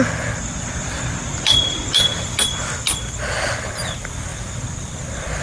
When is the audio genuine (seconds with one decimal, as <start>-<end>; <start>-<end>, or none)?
0.0-5.4